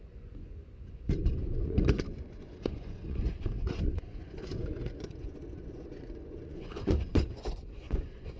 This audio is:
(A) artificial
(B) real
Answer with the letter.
A